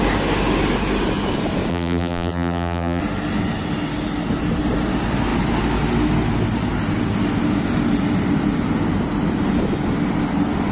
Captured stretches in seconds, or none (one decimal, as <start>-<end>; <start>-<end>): 0.0-1.7; 3.0-10.7